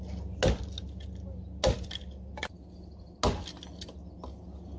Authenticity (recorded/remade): recorded